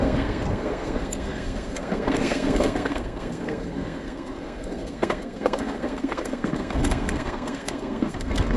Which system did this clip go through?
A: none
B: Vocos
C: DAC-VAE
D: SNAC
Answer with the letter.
D